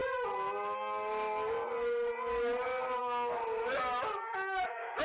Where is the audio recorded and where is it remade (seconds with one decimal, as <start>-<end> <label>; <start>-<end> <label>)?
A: 0.0-5.0 recorded